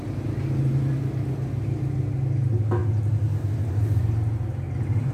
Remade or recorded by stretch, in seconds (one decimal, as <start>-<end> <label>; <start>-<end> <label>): 0.0-5.1 recorded